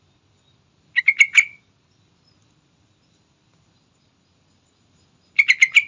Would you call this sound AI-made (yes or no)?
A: no